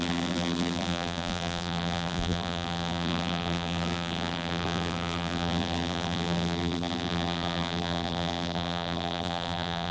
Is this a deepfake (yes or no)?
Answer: yes